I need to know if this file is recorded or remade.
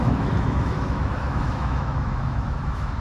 remade